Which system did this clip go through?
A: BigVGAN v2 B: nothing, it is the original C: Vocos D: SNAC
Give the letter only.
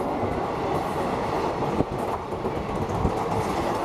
B